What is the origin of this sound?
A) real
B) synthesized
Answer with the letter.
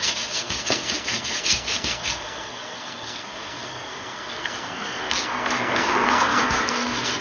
B